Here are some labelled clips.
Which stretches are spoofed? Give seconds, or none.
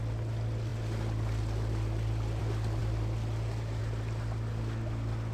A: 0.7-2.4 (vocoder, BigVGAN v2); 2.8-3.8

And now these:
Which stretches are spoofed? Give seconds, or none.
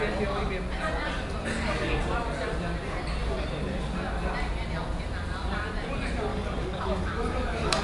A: 6.3-7.8 (codec, DAC)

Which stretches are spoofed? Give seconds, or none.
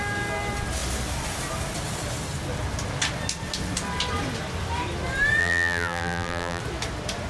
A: 5.4-6.6 (vocoder, BigVGAN v2)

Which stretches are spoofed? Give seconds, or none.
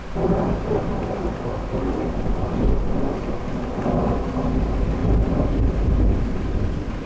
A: none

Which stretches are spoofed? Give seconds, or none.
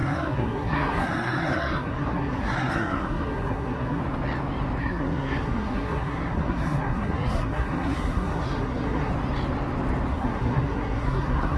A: 0.0-4.0 (codec, SNAC); 4.8-9.1; 10.1-11.6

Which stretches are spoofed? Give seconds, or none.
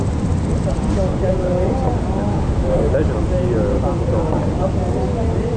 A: 2.3-2.9 (autoencoder, DAC-VAE)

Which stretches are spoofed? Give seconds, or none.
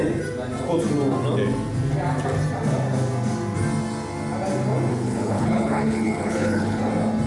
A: 4.9-6.8 (codec, HILCodec)